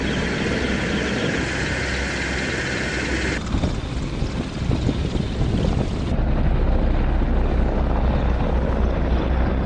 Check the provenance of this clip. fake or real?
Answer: real